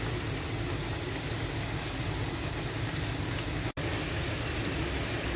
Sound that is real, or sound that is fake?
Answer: real